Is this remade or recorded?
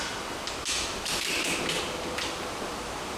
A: recorded